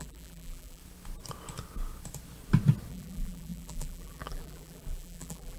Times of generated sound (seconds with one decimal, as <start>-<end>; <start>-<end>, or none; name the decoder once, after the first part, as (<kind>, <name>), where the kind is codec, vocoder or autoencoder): 0.0-0.8 (vocoder, BigVGAN v2); 2.9-5.6

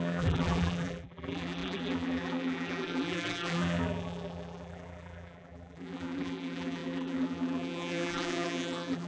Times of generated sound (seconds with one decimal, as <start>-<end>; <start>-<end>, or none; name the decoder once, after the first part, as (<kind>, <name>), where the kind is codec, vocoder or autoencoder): 0.0-9.1 (vocoder, BigVGAN v2)

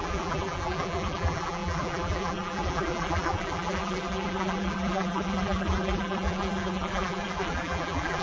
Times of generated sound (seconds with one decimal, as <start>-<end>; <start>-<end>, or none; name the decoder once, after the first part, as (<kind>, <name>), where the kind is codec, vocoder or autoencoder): 0.0-8.2 (vocoder, BigVGAN v2)

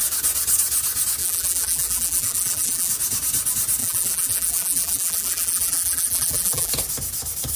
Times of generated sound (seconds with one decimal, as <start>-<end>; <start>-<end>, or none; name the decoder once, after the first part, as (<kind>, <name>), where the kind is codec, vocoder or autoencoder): 1.2-2.9 (vocoder, BigVGAN v2); 3.8-6.7

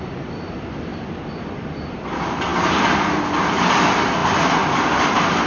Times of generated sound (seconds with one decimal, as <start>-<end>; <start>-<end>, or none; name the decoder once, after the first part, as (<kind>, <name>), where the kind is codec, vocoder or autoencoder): 0.0-2.5 (vocoder, BigVGAN v2); 3.6-5.5

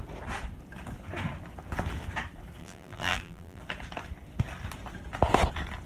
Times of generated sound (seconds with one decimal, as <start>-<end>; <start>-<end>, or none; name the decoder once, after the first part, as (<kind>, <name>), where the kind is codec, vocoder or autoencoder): 2.6-3.6 (vocoder, BigVGAN v2)